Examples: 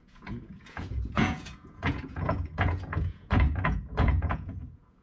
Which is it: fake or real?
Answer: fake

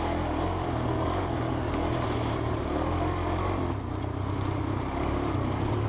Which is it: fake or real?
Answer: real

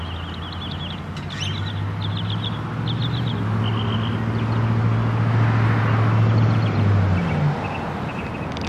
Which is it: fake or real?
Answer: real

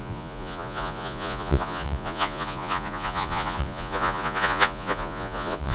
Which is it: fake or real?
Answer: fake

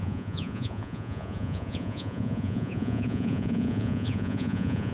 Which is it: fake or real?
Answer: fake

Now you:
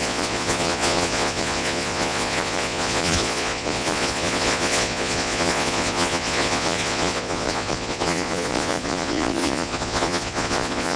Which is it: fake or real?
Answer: fake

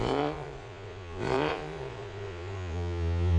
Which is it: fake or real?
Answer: fake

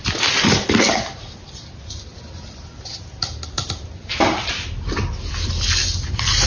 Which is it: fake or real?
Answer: real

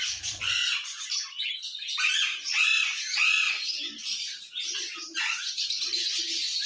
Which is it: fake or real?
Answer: real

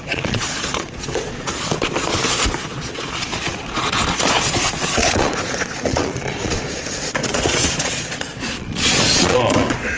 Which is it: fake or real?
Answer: fake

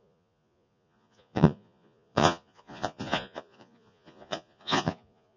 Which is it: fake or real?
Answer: fake